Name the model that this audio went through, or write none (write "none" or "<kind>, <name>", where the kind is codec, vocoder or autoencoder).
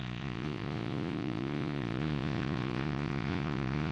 vocoder, Vocos